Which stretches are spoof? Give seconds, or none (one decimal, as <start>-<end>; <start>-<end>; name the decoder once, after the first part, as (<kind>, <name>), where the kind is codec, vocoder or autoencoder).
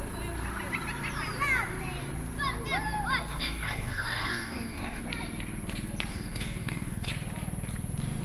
3.3-5.0 (codec, DAC); 6.1-7.1